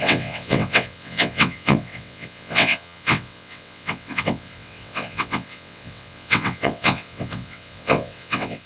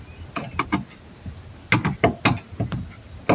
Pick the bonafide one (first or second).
second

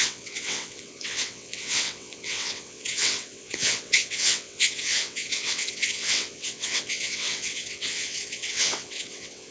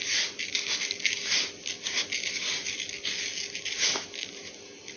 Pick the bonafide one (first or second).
second